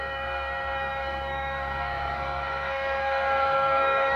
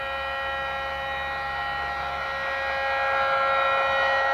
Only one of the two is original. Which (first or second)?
second